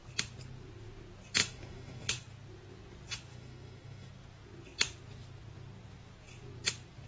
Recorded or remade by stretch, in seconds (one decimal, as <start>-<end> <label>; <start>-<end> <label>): 0.0-1.4 recorded; 1.4-2.1 remade; 2.1-3.3 recorded; 3.3-4.1 remade; 4.1-7.1 recorded